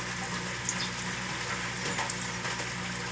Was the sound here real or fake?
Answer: real